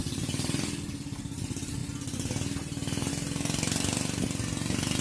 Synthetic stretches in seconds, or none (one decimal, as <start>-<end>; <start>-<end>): 0.0-0.6